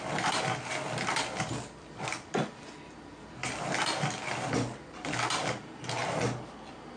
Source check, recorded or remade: recorded